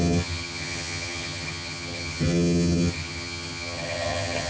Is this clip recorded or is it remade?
remade